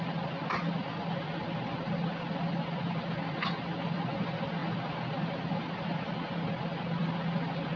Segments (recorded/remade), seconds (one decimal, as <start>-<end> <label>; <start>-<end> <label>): 0.0-7.8 recorded